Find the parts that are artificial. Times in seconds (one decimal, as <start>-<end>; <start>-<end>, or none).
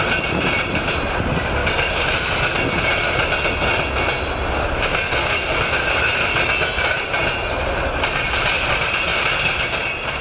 5.2-6.1